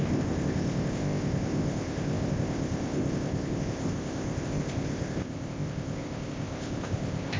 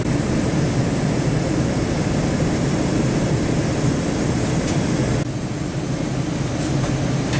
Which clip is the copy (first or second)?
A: first